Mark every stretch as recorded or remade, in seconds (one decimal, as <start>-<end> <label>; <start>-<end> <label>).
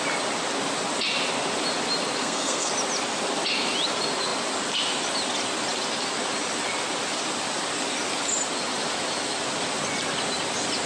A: 0.0-2.2 recorded; 2.2-2.7 remade; 2.7-10.9 recorded